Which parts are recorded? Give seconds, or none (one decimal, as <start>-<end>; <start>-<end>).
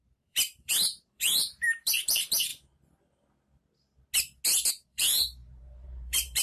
2.5-4.7